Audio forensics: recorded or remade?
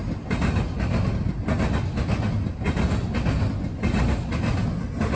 recorded